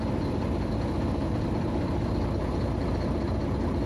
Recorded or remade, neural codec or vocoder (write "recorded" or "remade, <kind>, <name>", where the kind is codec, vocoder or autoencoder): remade, vocoder, BigVGAN v2